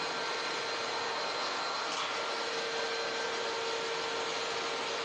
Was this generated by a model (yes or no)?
no